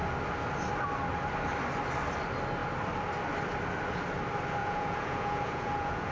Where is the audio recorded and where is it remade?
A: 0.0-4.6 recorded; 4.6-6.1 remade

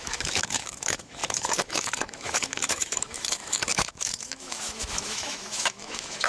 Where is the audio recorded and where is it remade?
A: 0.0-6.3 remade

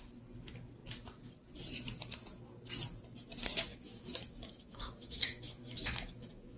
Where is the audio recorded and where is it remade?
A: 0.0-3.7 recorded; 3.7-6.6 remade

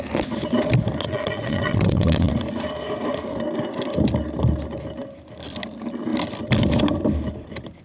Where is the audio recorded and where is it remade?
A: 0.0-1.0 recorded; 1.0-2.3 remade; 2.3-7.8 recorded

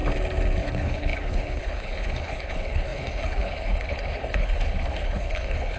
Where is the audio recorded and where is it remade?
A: 0.0-0.6 recorded; 0.6-5.8 remade

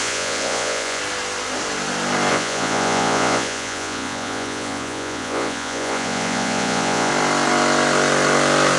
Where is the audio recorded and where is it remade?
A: 0.0-1.0 remade; 1.0-2.3 recorded; 2.3-7.1 remade; 7.1-8.8 recorded

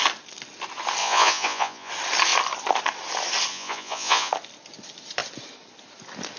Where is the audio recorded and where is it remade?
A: 0.0-1.0 recorded; 1.0-1.9 remade; 1.9-3.5 recorded; 3.5-4.3 remade; 4.3-6.4 recorded